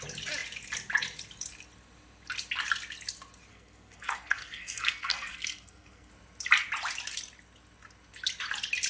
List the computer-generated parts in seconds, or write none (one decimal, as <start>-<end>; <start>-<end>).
3.5-6.1